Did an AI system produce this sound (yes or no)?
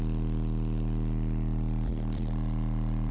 no